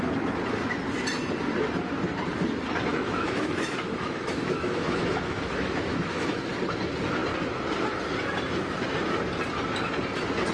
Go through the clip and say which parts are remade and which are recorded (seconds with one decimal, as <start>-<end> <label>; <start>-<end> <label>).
0.0-2.9 recorded; 2.9-6.5 remade; 6.5-10.5 recorded